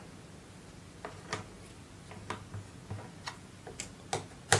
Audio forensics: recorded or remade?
recorded